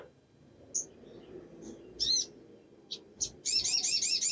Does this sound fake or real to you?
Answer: real